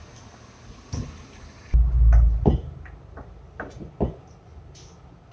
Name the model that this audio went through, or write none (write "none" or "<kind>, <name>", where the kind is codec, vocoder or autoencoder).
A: none